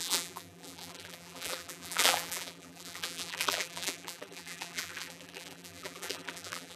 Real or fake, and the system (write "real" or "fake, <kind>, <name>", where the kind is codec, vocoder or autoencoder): fake, vocoder, BigVGAN v2